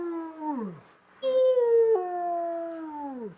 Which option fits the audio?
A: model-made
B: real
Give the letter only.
B